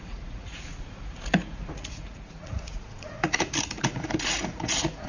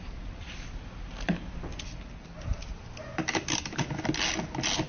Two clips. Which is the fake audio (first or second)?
first